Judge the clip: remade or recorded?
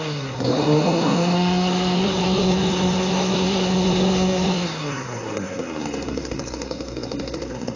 remade